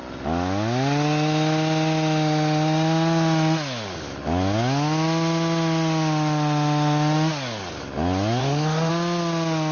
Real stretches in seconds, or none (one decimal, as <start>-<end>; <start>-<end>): 0.0-8.4; 8.9-9.7